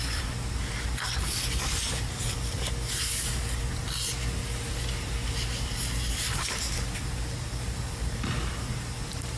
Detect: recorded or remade recorded